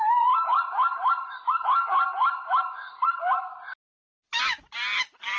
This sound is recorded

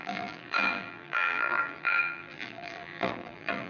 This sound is remade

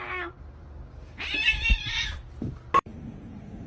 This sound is recorded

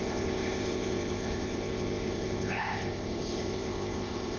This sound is remade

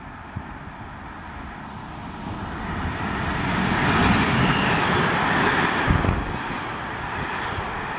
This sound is recorded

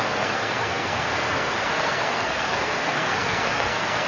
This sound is remade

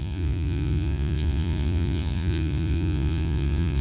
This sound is remade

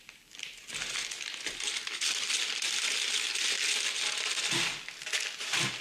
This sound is recorded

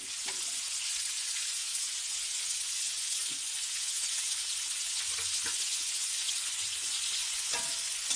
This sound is remade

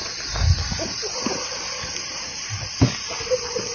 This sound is recorded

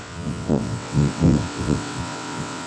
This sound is remade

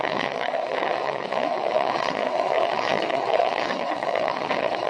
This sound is remade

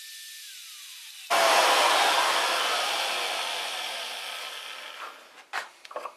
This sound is recorded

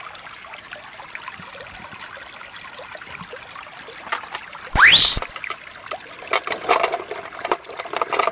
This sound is recorded